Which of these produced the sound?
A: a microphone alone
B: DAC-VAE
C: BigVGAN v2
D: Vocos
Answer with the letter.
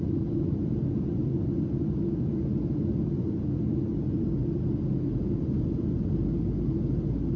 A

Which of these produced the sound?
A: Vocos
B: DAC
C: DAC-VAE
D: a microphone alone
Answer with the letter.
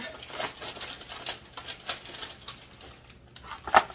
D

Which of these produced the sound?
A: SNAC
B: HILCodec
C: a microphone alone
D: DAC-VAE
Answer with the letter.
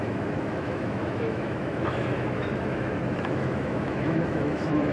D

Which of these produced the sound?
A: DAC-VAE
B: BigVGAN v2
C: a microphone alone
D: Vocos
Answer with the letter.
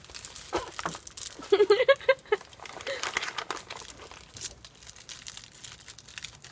C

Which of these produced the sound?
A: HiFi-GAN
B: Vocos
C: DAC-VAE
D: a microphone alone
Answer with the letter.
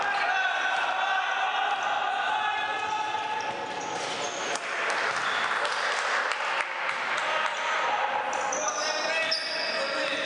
D